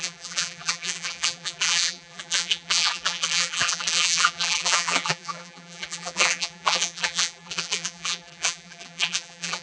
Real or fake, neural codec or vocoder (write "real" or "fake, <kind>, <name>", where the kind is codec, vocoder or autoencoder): fake, vocoder, BigVGAN v2